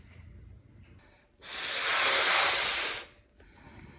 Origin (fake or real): real